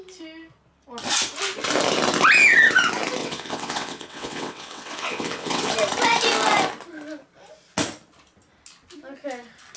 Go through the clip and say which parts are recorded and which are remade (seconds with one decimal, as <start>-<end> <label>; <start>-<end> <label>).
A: 0.0-3.2 recorded; 3.2-5.7 remade; 5.7-9.8 recorded